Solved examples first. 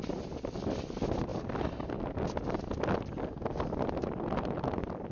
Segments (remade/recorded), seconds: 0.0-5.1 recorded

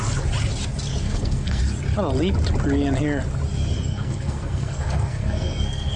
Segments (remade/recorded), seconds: 0.0-1.0 recorded; 1.0-1.6 remade; 1.6-3.9 recorded; 3.9-6.0 remade

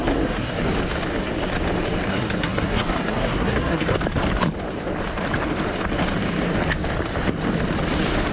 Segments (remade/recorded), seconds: 0.0-0.6 remade; 0.6-2.1 recorded; 2.1-3.9 remade; 3.9-8.3 recorded